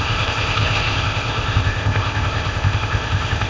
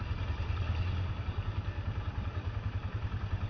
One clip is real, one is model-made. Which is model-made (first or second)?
first